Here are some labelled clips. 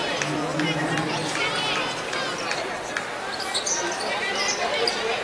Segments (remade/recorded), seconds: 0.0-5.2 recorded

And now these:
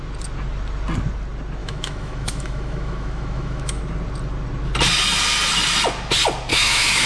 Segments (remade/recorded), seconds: 0.0-1.6 recorded; 1.6-3.8 remade; 3.8-6.5 recorded; 6.5-7.1 remade

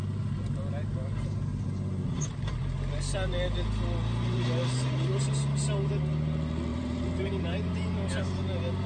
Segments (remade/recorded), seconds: 0.0-6.7 recorded; 6.7-7.3 remade; 7.3-8.9 recorded

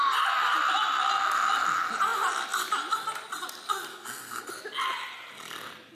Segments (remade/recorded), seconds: 0.0-3.9 recorded; 3.9-4.5 remade; 4.5-5.9 recorded

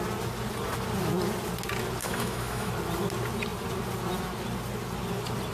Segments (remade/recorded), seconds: 0.0-2.0 recorded; 2.0-2.7 remade; 2.7-5.5 recorded